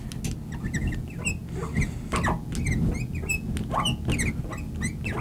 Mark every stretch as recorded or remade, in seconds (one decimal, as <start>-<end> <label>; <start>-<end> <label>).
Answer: 0.0-5.2 recorded